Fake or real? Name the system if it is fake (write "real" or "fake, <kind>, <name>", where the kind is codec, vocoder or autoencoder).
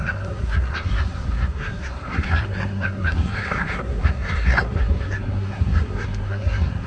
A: fake, codec, SNAC